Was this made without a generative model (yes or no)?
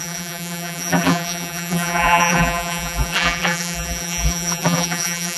no